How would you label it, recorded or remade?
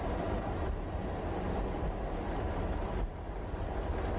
recorded